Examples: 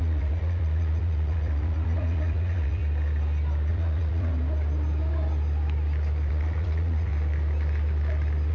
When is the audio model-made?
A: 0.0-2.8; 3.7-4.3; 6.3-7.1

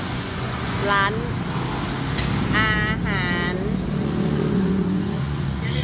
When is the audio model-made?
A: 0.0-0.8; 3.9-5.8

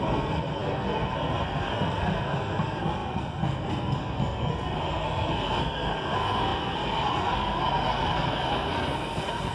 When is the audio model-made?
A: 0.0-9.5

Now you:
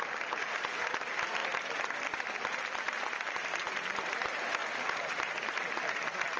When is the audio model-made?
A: none

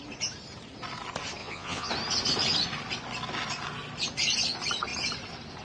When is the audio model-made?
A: 1.4-1.9